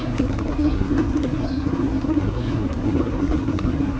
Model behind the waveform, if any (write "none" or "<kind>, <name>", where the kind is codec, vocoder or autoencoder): codec, SNAC